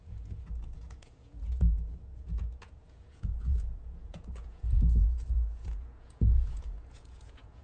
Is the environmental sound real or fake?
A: fake